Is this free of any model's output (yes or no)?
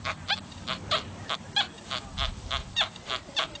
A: no